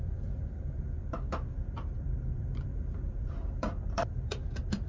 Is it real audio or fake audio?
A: fake